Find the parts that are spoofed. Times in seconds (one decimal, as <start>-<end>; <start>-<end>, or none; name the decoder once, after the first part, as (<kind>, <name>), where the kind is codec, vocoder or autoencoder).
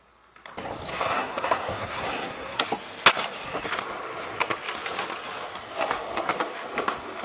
0.9-2.6 (codec, SNAC)